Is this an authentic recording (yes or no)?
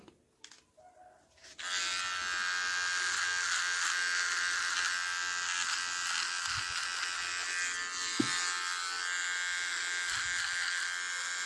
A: yes